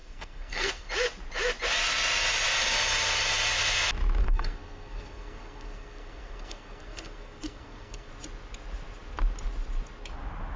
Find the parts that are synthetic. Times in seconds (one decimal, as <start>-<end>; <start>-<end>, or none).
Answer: 0.0-0.9; 4.2-8.1